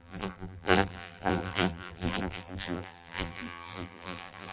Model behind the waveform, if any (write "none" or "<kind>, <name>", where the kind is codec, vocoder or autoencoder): vocoder, BigVGAN v2